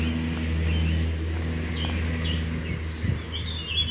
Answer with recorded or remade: recorded